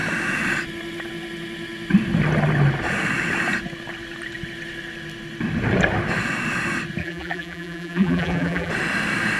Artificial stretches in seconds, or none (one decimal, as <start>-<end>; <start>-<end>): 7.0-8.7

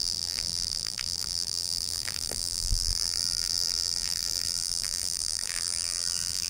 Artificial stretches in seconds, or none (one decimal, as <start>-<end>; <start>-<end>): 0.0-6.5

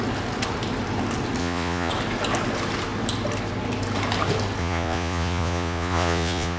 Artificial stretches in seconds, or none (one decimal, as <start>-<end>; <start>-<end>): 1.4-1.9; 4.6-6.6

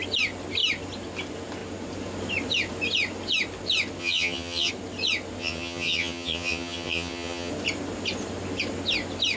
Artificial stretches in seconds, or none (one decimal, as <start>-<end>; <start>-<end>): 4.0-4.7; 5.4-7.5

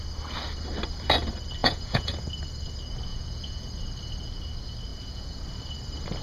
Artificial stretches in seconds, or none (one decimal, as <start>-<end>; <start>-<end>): 1.6-2.3; 3.1-3.7; 4.9-5.4